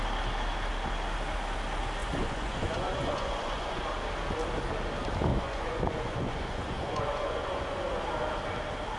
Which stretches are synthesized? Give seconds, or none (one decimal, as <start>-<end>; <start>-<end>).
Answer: 2.0-3.8; 5.3-7.8